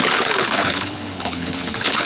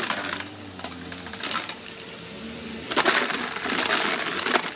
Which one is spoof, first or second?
first